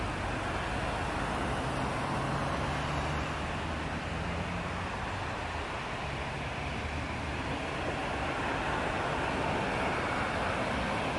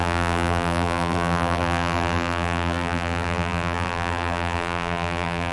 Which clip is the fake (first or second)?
second